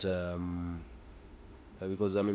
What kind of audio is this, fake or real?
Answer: fake